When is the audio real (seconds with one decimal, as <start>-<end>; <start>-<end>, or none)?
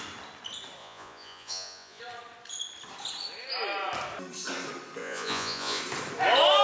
0.0-0.8; 2.0-5.0; 5.8-6.6